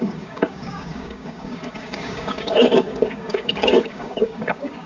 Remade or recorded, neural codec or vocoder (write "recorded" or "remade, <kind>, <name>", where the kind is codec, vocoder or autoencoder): remade, codec, DAC